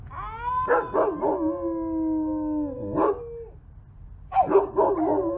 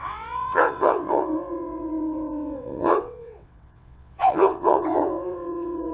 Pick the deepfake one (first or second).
second